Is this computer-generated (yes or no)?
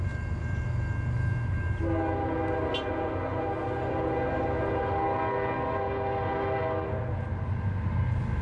no